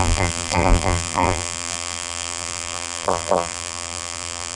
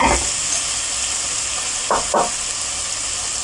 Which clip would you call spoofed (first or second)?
first